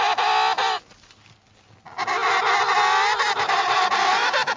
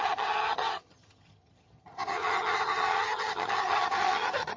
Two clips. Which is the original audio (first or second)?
first